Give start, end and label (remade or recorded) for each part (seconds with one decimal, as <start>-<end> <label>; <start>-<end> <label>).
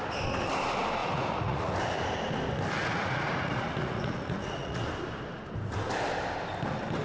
0.0-1.0 recorded; 1.0-1.7 remade; 1.7-2.8 recorded; 2.8-4.8 remade; 4.8-7.0 recorded